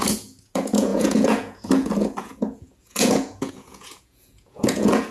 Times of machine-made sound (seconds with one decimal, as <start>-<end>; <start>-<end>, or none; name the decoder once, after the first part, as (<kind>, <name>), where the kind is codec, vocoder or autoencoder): 0.0-5.1 (vocoder, Vocos)